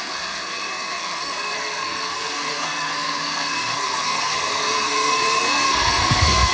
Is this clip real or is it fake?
fake